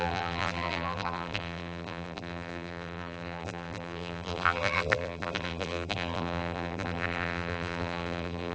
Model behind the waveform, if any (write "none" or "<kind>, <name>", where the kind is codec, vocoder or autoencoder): vocoder, BigVGAN v2